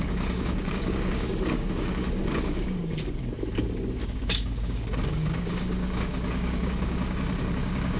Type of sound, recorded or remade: remade